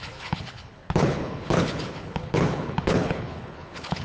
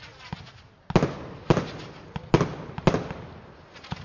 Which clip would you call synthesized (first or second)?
first